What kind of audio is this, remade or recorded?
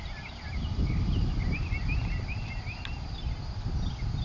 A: recorded